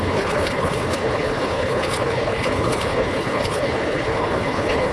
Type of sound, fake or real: fake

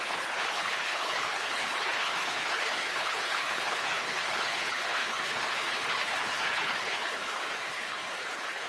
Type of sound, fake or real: fake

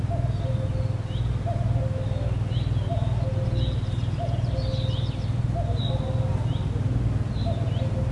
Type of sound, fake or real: real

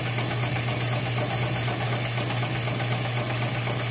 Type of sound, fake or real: real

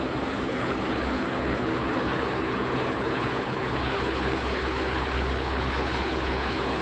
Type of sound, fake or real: fake